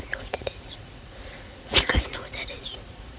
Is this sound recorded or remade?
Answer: remade